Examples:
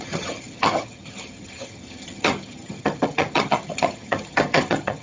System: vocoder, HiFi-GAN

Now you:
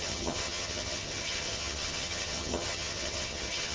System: vocoder, HiFi-GAN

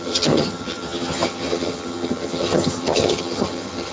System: vocoder, HiFi-GAN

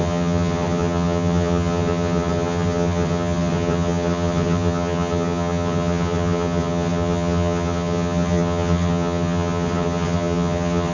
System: vocoder, HiFi-GAN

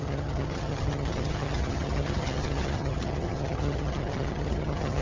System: vocoder, HiFi-GAN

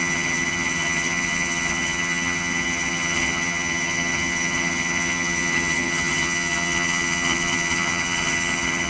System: vocoder, HiFi-GAN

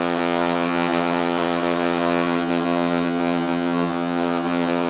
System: vocoder, HiFi-GAN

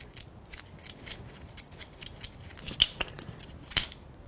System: none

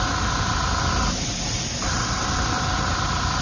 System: none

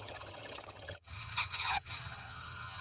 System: vocoder, HiFi-GAN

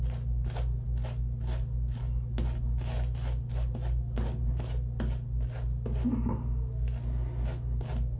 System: none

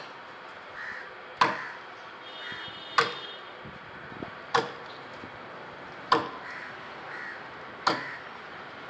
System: none